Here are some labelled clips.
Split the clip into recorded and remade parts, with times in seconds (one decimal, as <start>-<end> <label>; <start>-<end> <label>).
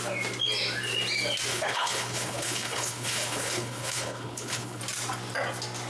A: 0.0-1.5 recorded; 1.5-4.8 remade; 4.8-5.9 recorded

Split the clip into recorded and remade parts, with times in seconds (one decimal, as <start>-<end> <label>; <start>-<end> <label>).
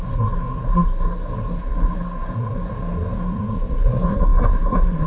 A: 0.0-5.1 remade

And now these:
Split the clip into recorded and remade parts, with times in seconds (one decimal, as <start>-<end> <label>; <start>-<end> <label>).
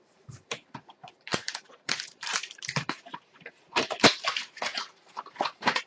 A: 0.0-5.9 remade